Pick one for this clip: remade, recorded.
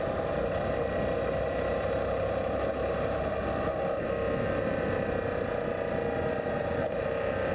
recorded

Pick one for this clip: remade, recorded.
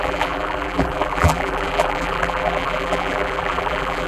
remade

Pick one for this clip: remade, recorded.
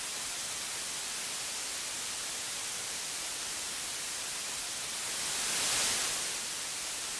remade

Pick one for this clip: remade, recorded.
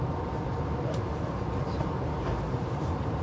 remade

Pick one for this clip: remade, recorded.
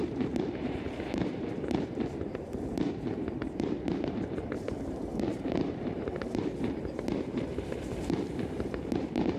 remade